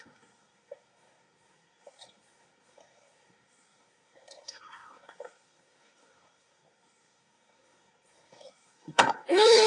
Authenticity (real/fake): fake